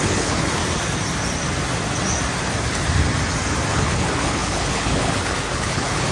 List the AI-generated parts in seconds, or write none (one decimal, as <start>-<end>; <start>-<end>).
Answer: 0.0-0.6; 3.7-6.1